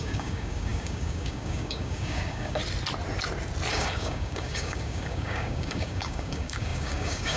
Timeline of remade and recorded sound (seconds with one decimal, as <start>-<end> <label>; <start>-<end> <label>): 0.0-2.6 remade; 2.6-3.7 recorded; 3.7-7.4 remade